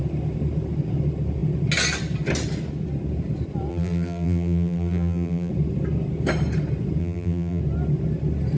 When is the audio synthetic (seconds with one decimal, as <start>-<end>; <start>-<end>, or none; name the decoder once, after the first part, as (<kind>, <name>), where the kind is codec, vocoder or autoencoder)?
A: 3.7-5.5 (vocoder, BigVGAN v2); 7.0-7.6